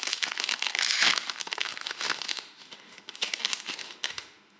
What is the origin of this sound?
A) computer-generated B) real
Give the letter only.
A